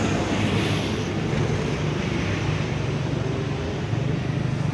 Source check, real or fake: real